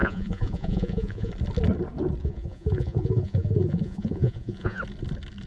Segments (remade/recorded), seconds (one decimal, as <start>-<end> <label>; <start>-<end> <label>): 0.0-1.3 remade; 1.3-2.2 recorded; 2.2-4.8 remade; 4.8-5.5 recorded